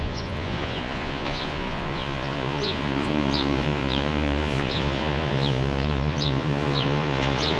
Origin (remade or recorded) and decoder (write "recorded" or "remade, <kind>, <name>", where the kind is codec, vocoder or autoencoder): remade, vocoder, Vocos